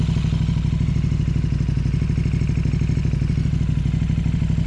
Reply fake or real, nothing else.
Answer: real